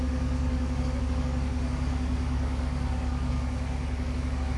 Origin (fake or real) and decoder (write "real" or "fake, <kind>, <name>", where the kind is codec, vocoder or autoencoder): fake, codec, DAC